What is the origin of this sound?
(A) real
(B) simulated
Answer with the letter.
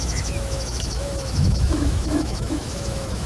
B